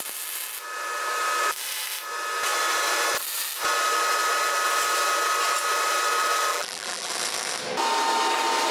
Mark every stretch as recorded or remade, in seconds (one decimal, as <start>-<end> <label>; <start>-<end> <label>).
0.0-6.5 recorded; 6.5-7.1 remade; 7.1-8.7 recorded